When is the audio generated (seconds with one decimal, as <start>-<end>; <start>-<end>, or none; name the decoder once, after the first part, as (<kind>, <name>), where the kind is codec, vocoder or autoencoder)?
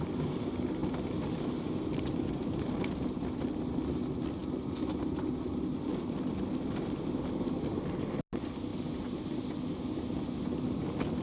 none